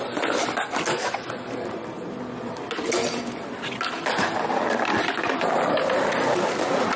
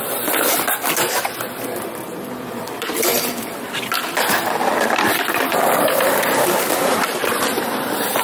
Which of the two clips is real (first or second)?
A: first